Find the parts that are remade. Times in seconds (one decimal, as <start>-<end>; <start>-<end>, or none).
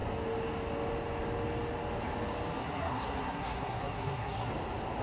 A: 2.6-4.5